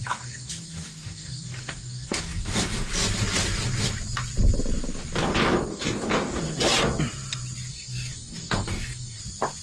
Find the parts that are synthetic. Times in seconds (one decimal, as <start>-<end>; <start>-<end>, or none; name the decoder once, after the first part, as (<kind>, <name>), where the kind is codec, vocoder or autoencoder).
0.0-2.9 (codec, DAC); 5.7-6.4; 7.7-9.2